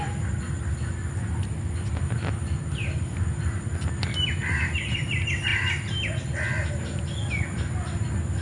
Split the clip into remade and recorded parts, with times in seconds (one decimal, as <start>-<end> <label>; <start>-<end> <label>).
0.0-8.4 recorded